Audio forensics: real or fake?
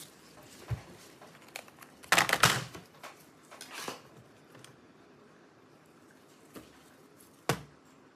real